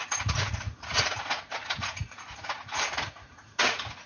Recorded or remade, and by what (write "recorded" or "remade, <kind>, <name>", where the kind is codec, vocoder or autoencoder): remade, vocoder, Vocos